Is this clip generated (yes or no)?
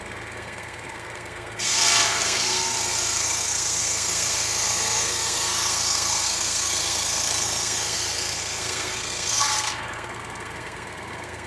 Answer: yes